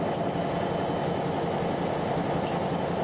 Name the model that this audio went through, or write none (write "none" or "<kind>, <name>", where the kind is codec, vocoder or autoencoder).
none